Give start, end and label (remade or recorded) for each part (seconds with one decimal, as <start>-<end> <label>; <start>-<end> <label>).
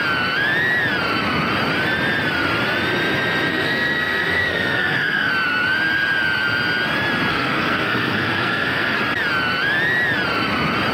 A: 0.0-3.5 recorded; 3.5-5.3 remade; 5.3-7.3 recorded; 7.3-9.0 remade; 9.0-10.9 recorded